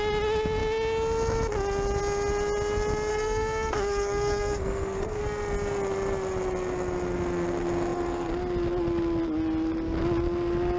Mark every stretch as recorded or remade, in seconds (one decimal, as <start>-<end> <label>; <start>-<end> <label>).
0.0-3.1 recorded; 3.1-5.2 remade; 5.2-10.8 recorded